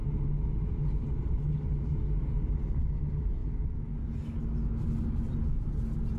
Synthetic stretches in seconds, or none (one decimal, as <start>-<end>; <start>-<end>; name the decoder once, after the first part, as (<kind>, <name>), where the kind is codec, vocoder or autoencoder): none